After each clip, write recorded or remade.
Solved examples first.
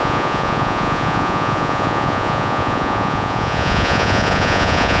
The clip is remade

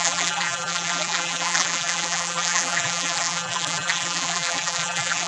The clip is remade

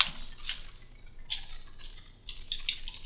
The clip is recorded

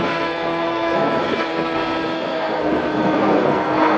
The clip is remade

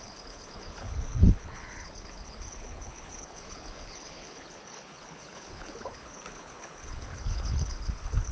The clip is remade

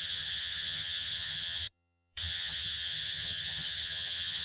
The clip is remade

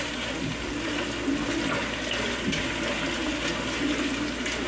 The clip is recorded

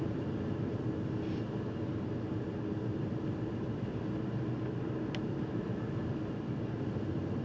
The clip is recorded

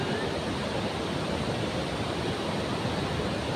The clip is recorded